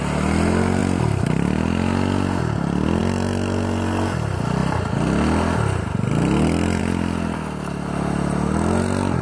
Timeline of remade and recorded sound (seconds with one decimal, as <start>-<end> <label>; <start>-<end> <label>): 0.0-9.2 recorded

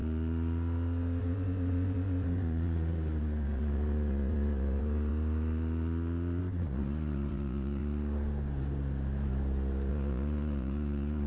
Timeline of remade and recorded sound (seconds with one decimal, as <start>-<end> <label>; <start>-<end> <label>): 0.0-1.2 recorded; 1.2-5.1 remade; 5.1-6.4 recorded; 6.4-7.8 remade; 7.8-9.9 recorded; 9.9-11.3 remade

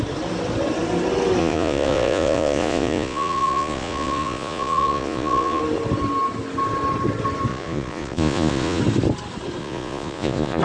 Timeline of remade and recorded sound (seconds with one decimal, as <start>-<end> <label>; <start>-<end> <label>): 0.0-1.4 recorded; 1.4-5.6 remade; 5.6-7.5 recorded; 7.5-8.8 remade; 8.8-9.6 recorded; 9.6-10.6 remade

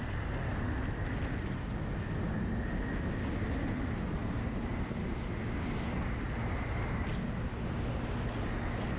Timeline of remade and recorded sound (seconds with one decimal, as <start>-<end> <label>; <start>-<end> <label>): 0.0-9.0 recorded

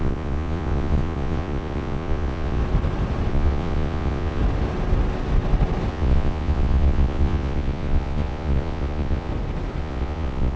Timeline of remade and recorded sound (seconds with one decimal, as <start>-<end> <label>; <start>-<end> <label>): 0.0-2.6 remade; 2.6-3.3 recorded; 3.3-4.4 remade; 4.4-5.9 recorded; 5.9-9.3 remade; 9.3-9.8 recorded; 9.8-10.6 remade

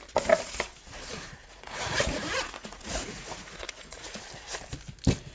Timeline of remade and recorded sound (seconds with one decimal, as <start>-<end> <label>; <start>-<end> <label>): 0.0-1.4 recorded; 1.4-4.2 remade; 4.2-5.3 recorded

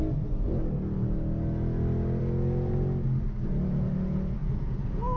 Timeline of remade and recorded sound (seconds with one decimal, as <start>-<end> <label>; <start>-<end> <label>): 0.0-4.4 recorded; 4.4-5.2 remade

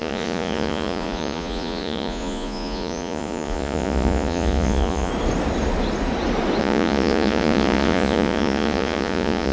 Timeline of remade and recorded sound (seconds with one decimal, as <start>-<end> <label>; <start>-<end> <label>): 0.0-5.1 remade; 5.1-6.6 recorded; 6.6-9.5 remade